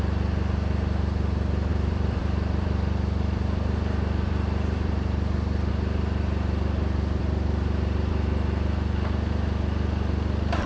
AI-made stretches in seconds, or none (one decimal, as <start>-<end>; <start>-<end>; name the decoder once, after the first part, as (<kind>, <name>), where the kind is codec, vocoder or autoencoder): 1.7-5.7 (vocoder, BigVGAN v2); 7.2-8.1